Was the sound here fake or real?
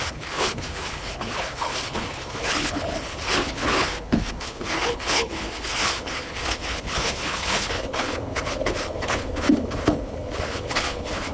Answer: fake